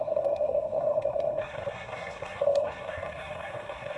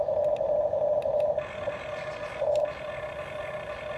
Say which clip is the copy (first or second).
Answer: first